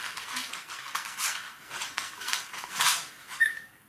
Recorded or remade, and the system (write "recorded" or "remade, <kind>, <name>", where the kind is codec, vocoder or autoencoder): remade, codec, SNAC